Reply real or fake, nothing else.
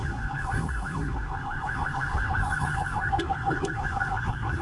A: fake